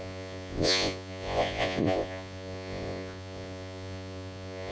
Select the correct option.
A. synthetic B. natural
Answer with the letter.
A